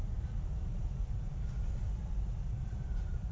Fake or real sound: fake